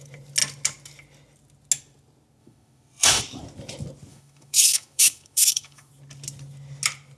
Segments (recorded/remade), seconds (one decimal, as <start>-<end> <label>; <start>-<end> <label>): 0.0-2.4 recorded; 2.4-3.2 remade; 3.2-4.1 recorded; 4.1-5.9 remade; 5.9-7.2 recorded